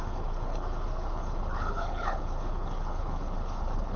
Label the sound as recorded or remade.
remade